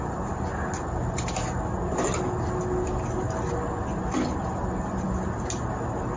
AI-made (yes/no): no